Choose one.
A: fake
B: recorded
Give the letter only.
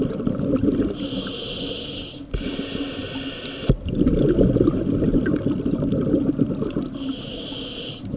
B